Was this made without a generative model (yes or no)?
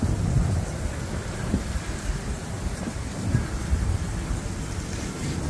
yes